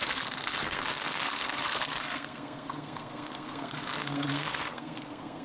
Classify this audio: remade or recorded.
remade